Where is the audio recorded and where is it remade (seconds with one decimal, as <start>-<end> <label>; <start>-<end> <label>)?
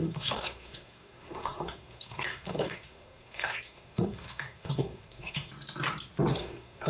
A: 0.0-5.5 remade; 5.5-6.3 recorded; 6.3-6.9 remade